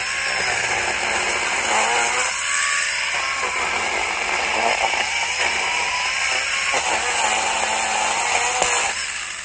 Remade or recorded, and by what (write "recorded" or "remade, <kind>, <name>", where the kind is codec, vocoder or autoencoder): recorded